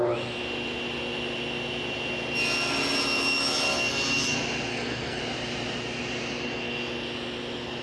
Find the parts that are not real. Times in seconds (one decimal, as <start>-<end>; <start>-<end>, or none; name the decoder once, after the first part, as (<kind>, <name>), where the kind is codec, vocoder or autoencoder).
4.7-5.2 (codec, SNAC)